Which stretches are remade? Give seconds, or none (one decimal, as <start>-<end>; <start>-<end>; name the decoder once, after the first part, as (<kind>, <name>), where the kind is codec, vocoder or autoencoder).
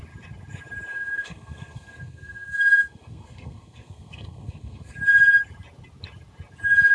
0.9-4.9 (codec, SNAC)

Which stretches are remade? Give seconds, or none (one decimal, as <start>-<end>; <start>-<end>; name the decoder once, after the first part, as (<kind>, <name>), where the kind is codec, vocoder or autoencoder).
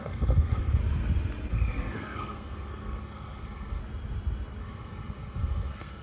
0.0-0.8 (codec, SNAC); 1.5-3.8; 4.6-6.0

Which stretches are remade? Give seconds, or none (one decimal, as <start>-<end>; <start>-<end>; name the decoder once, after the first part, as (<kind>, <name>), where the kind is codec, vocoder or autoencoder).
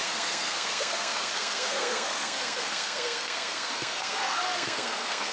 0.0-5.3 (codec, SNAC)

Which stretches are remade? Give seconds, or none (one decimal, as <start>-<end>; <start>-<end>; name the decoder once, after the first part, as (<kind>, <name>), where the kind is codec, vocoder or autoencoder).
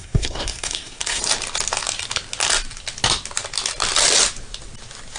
0.0-1.2 (codec, SNAC)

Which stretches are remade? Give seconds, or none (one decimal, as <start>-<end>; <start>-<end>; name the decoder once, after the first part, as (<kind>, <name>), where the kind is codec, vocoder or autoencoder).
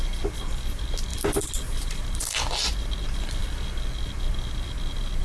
none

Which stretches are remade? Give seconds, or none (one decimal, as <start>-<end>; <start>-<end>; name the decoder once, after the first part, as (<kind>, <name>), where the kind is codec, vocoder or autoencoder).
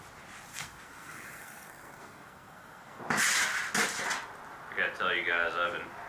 0.5-3.0 (codec, SNAC)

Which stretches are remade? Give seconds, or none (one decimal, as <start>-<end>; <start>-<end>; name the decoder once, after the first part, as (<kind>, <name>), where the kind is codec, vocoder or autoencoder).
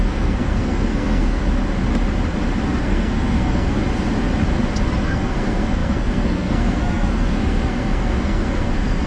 0.0-1.4 (codec, SNAC); 2.8-3.8; 5.0-9.1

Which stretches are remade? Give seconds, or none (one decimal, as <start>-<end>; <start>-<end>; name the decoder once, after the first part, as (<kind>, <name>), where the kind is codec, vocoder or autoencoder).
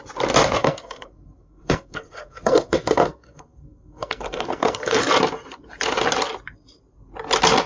0.6-5.1 (codec, SNAC)